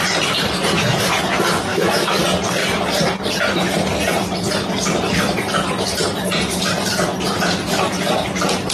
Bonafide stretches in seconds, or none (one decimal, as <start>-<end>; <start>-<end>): 0.0-0.7; 1.2-1.7; 2.2-8.7